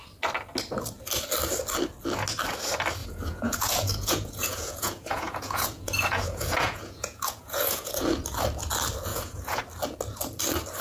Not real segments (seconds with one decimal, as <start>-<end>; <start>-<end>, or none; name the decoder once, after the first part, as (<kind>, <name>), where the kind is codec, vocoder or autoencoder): 3.0-7.9 (vocoder, Vocos); 9.1-9.6